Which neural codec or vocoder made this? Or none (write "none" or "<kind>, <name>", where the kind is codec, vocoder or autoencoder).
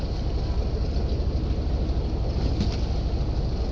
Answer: none